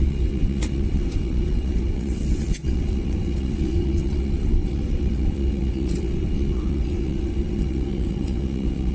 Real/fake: fake